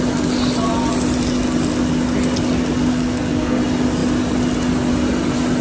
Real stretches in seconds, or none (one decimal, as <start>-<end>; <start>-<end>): 0.0-2.9; 3.6-5.6